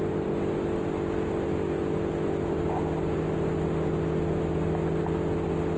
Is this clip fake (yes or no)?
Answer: no